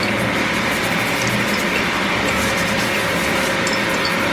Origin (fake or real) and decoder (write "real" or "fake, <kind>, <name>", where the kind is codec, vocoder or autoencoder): real